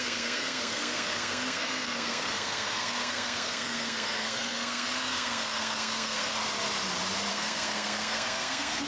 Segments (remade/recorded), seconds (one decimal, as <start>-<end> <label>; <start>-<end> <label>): 0.0-6.4 remade; 6.4-7.3 recorded; 7.3-8.9 remade